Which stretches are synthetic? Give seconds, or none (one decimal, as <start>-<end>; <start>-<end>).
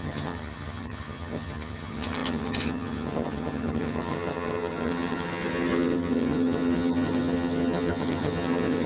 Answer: 0.0-8.9